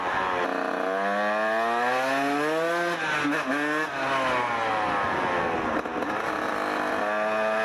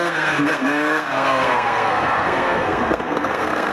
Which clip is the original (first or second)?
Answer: first